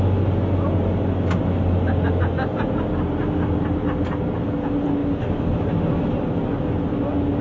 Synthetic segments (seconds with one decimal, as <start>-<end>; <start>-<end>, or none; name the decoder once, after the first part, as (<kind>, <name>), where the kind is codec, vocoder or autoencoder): 5.0-5.7 (vocoder, BigVGAN v2)